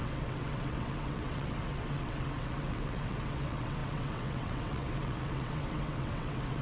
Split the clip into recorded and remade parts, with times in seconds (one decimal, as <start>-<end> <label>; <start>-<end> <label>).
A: 0.0-6.6 remade